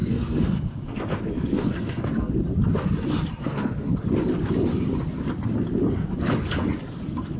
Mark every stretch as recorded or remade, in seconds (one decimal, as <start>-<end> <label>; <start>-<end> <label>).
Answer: 0.0-2.3 remade; 2.3-3.4 recorded; 3.4-3.9 remade; 3.9-7.4 recorded